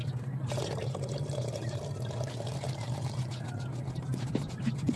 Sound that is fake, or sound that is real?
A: fake